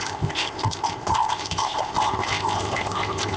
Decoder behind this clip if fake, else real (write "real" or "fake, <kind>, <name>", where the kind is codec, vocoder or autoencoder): fake, codec, ZipCodec